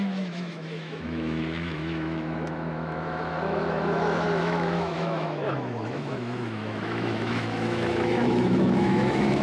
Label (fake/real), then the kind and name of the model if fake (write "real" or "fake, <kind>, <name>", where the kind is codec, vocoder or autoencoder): fake, autoencoder, DAC-VAE